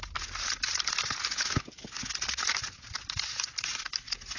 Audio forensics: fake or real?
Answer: real